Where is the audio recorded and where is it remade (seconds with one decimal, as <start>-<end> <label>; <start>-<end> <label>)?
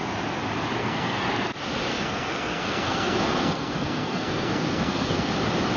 0.0-0.8 recorded; 0.8-1.3 remade; 1.3-1.9 recorded; 1.9-5.3 remade; 5.3-5.8 recorded